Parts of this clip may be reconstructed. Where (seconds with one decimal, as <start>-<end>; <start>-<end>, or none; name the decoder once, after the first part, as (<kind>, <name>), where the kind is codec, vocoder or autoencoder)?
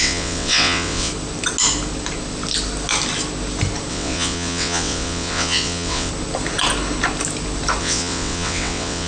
0.0-1.1 (vocoder, WaveNeXt); 3.9-6.1; 7.8-9.1